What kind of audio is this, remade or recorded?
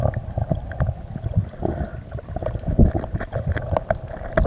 recorded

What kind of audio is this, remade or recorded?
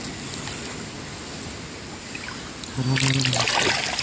recorded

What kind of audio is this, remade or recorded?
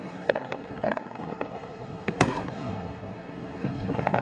remade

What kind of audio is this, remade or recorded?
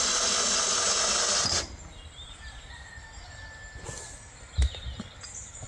recorded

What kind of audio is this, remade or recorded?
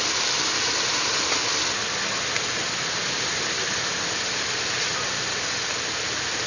recorded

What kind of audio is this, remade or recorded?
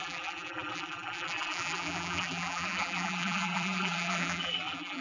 remade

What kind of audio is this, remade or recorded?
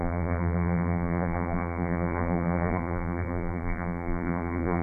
remade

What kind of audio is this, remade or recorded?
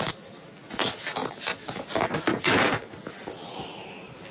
recorded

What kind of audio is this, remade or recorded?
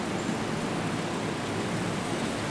recorded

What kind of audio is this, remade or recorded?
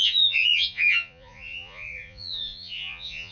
remade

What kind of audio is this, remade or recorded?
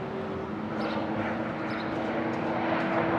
recorded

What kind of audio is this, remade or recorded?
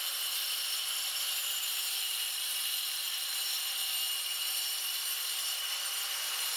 remade